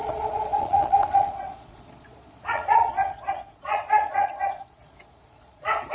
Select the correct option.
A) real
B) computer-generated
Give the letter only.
B